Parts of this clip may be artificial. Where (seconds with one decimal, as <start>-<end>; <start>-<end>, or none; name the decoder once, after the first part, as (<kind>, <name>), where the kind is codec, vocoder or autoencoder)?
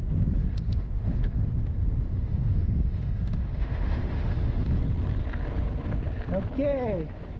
0.4-4.8 (autoencoder, DAC-VAE)